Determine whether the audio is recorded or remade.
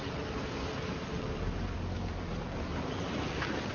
remade